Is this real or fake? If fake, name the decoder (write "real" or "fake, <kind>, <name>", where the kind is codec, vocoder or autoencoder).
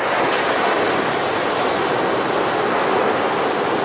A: real